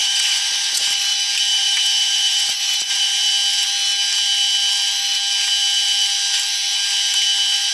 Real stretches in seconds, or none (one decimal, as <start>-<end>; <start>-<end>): 0.8-1.5; 3.3-7.7

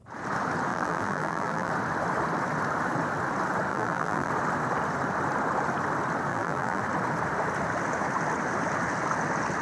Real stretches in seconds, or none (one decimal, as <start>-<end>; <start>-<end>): 0.0-0.7; 1.7-3.7; 4.3-6.3; 6.8-9.6

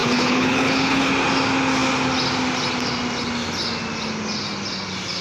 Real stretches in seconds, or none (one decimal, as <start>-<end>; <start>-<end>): 1.1-5.2

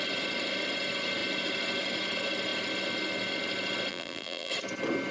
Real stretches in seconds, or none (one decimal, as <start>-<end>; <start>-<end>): 0.0-3.9; 4.5-5.1

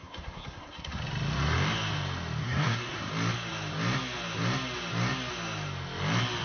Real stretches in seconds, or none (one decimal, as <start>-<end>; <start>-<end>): 1.0-2.4; 3.1-6.4